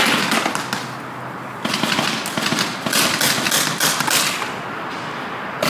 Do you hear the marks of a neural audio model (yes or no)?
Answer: no